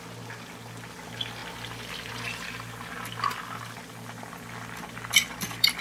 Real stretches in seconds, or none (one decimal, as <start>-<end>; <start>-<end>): 0.0-5.8